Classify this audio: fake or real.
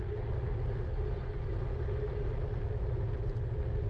real